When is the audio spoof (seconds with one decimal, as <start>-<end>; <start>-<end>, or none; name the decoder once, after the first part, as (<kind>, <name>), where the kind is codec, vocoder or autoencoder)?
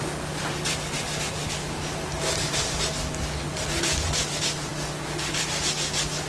none